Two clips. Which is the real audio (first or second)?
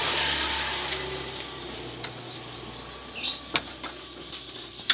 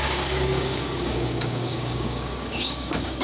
first